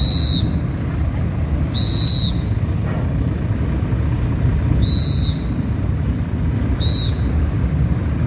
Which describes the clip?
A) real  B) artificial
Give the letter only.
A